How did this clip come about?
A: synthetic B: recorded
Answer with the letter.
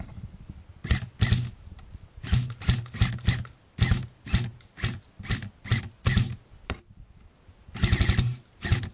B